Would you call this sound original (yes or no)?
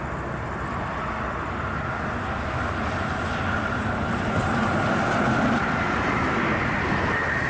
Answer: yes